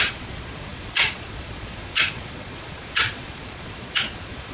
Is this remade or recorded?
remade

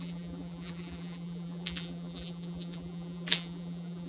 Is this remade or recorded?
remade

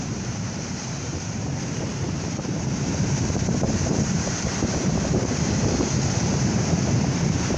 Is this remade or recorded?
remade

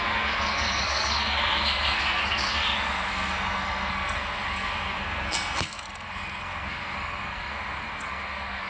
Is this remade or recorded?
remade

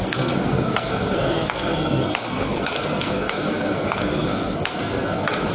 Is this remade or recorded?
remade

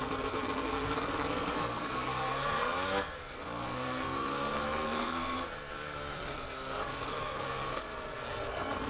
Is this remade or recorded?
remade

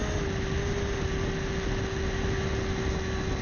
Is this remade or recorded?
recorded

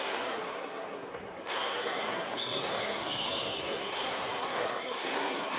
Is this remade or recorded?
remade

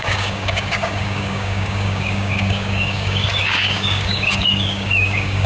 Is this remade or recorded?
remade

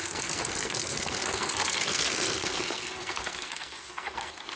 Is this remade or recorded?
remade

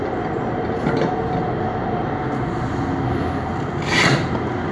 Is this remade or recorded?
recorded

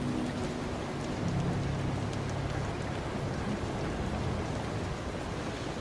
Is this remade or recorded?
recorded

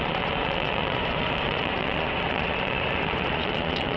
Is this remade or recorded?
remade